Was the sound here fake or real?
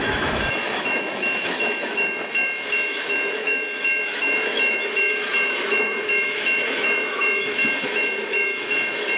fake